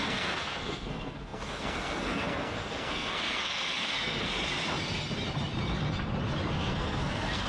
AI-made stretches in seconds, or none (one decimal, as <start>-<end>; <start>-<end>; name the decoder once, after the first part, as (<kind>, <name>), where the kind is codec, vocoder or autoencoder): 0.0-4.3 (codec, SNAC); 6.5-7.5